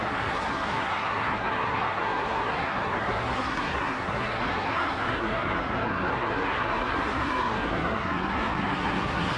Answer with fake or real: fake